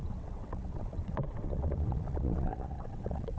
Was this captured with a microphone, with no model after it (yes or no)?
no